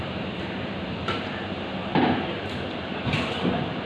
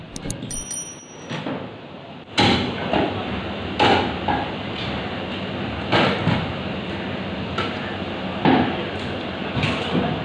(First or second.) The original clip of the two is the second